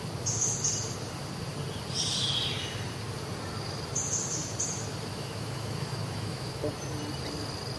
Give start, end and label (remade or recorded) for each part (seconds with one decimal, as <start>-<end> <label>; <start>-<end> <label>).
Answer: 0.0-5.1 recorded; 5.1-6.6 remade; 6.6-7.8 recorded